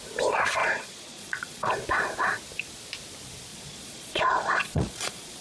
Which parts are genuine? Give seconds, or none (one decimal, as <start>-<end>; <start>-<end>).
0.0-0.6; 1.7-3.5